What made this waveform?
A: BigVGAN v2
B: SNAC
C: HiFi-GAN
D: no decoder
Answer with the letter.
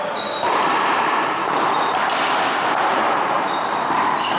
A